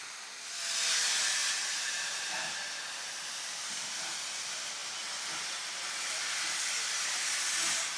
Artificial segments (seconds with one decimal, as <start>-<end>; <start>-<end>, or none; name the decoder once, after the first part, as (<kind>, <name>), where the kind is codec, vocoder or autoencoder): none